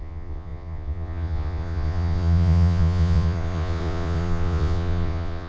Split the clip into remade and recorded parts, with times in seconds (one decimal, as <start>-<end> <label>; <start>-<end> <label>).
0.0-5.5 remade